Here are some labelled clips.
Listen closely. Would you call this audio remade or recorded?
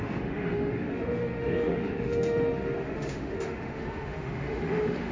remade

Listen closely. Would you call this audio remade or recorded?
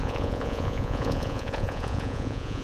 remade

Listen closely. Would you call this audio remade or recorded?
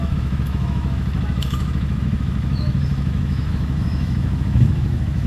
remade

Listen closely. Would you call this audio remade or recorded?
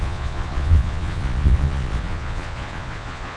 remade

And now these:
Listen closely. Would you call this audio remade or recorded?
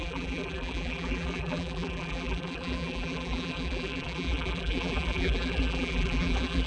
remade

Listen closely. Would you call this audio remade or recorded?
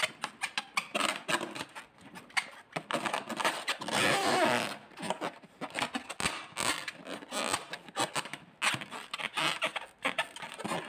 recorded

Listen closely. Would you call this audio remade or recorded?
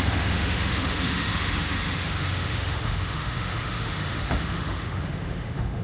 remade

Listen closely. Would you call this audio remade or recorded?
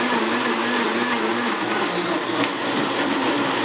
recorded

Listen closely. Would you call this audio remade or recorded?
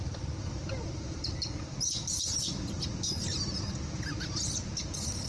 remade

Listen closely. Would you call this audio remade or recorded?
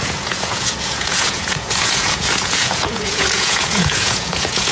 remade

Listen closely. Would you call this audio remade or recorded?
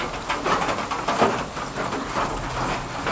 recorded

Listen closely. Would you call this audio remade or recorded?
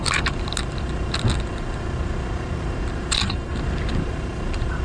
recorded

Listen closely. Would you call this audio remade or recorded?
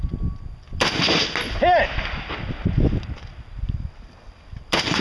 recorded